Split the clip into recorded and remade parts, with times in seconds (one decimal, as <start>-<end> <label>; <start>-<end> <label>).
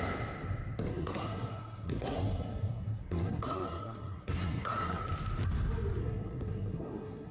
0.0-0.9 recorded; 0.9-5.0 remade; 5.0-6.0 recorded; 6.0-7.3 remade